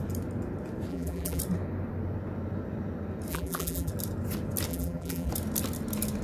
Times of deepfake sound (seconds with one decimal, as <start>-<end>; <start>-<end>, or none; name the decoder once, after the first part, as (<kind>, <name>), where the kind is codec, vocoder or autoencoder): 0.9-1.4 (vocoder, BigVGAN v2); 3.3-3.9; 4.7-5.3

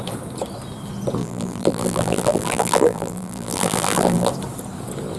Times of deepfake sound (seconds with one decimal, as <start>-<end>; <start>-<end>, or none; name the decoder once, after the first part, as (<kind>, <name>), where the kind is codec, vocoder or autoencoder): 1.2-4.3 (vocoder, BigVGAN v2)

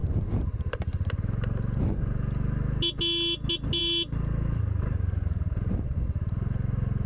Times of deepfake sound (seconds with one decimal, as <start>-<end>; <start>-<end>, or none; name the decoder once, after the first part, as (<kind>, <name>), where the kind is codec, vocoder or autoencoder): none

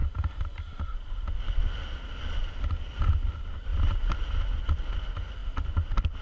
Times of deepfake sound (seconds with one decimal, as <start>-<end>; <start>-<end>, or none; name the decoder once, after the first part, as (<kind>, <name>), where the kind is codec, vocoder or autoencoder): 3.7-4.3 (vocoder, BigVGAN v2)

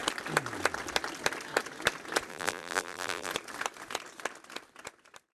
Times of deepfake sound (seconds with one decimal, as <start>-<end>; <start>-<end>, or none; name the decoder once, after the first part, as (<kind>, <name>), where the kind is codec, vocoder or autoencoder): 2.3-3.3 (vocoder, BigVGAN v2)

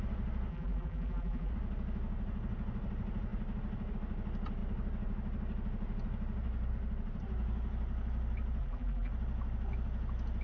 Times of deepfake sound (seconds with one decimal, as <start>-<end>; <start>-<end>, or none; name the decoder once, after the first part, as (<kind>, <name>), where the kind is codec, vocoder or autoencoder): 0.5-1.5 (vocoder, BigVGAN v2); 8.6-9.1

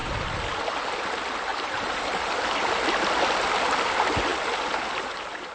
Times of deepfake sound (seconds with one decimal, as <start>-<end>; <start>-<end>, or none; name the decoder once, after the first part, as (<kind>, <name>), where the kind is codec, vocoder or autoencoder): 0.0-0.7 (vocoder, BigVGAN v2); 1.5-2.5